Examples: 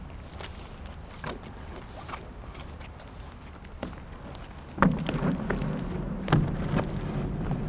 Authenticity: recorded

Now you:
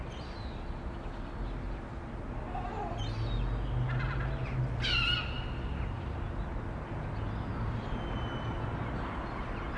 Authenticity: recorded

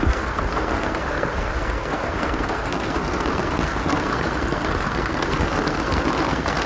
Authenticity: remade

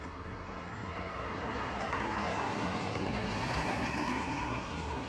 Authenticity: remade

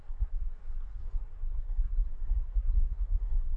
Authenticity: remade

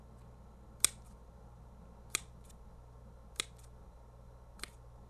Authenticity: recorded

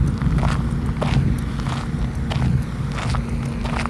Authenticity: recorded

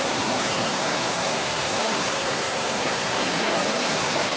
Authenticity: remade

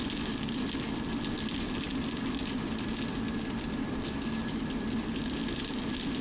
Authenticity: recorded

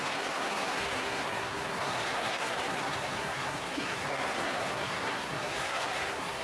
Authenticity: remade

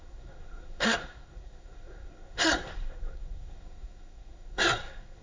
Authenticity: remade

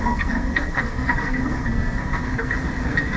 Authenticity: remade